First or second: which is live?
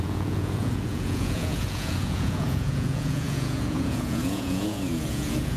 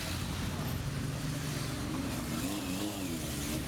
second